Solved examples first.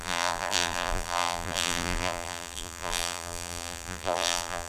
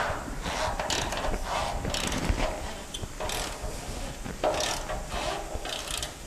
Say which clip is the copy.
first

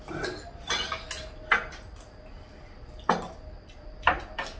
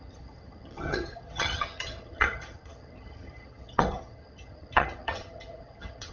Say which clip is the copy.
second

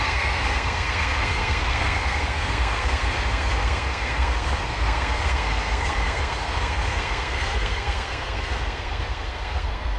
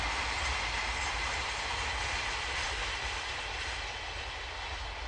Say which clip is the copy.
first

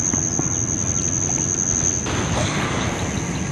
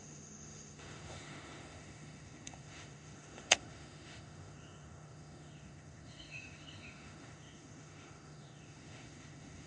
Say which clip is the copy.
second